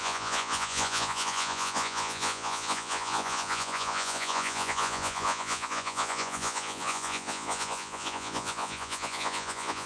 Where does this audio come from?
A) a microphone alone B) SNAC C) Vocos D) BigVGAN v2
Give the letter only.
C